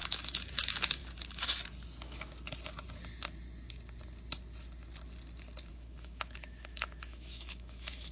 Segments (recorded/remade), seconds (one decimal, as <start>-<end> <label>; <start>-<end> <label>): 0.0-1.0 remade; 1.0-5.7 recorded; 5.7-8.1 remade

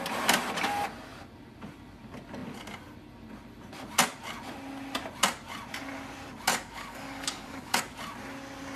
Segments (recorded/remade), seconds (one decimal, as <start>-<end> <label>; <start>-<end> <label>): 0.0-6.5 recorded; 6.5-7.8 remade; 7.8-8.8 recorded

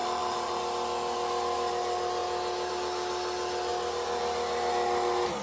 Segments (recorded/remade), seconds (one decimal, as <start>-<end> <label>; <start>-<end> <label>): 0.0-0.6 remade; 0.6-5.4 recorded

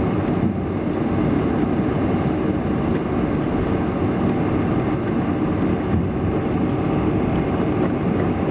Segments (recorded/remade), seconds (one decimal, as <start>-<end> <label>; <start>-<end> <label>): 0.0-8.5 recorded

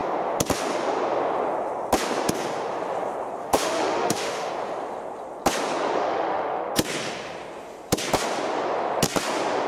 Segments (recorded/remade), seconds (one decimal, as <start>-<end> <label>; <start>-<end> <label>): 0.0-3.4 recorded; 3.4-4.5 remade; 4.5-6.0 recorded; 6.0-6.7 remade; 6.7-9.7 recorded